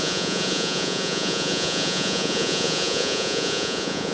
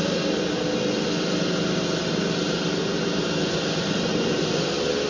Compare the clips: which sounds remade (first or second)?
first